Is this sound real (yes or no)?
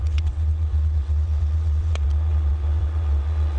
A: no